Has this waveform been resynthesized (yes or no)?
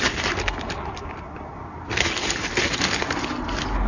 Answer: no